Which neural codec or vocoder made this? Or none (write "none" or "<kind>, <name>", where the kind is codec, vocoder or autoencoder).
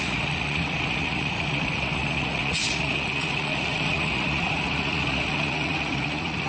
vocoder, Vocos